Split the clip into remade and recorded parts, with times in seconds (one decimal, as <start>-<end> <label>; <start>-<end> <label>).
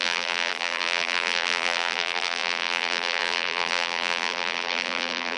0.0-5.4 remade